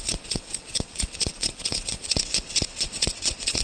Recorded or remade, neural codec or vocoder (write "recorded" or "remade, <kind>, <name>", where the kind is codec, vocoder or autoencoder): remade, vocoder, WaveNeXt